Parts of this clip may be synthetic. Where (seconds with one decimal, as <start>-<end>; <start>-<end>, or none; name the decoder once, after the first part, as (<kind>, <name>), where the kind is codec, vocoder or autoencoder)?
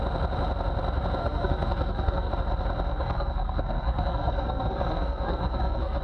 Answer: 1.2-2.3 (codec, SNAC); 2.9-6.0